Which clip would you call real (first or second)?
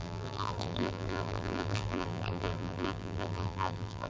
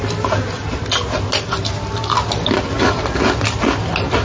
second